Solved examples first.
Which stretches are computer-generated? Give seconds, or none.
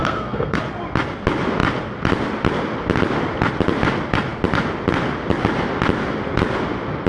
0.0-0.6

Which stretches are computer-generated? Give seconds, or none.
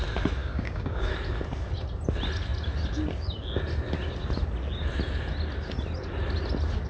0.4-1.1